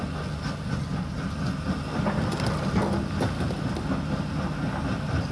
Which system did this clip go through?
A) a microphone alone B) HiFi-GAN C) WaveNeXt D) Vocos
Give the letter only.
A